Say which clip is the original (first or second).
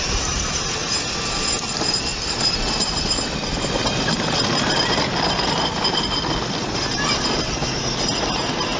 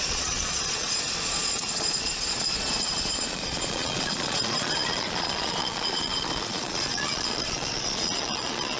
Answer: first